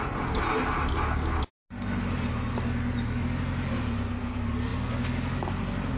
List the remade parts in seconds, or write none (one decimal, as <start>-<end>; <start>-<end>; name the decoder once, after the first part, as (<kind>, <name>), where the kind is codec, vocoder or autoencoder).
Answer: none